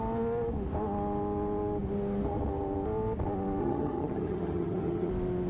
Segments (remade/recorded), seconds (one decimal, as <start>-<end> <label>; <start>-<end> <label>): 0.0-3.6 recorded; 3.6-5.1 remade; 5.1-5.5 recorded